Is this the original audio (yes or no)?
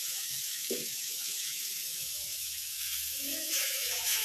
no